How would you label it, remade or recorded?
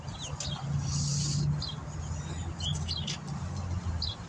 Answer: recorded